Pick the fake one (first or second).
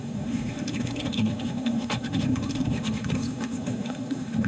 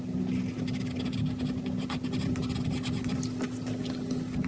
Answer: first